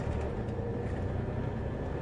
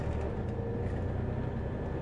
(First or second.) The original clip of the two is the second